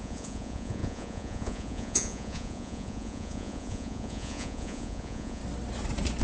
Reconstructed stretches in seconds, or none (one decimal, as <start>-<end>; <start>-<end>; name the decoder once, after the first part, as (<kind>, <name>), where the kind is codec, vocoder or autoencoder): 0.0-5.4 (vocoder, Vocos)